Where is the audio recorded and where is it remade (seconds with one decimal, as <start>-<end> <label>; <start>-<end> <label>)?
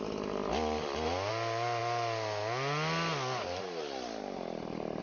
0.0-5.0 recorded